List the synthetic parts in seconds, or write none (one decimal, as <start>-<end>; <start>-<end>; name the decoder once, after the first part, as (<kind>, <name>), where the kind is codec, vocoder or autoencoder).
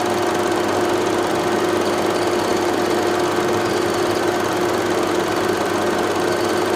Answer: none